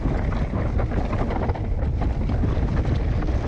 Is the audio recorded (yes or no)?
yes